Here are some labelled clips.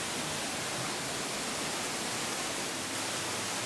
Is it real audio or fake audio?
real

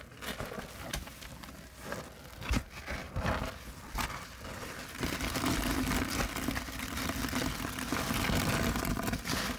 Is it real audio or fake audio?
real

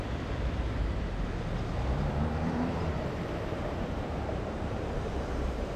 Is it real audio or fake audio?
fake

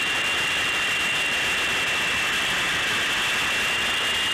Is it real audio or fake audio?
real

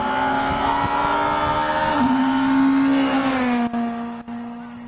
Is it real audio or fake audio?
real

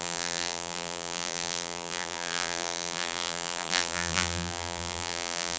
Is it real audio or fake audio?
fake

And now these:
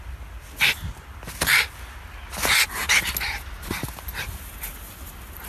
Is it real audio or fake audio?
real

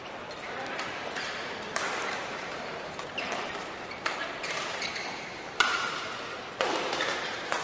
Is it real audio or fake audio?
fake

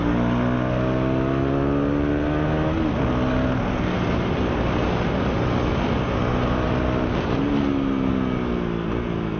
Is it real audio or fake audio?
real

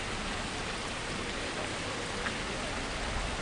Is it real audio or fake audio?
real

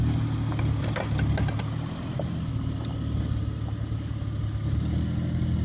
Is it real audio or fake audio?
real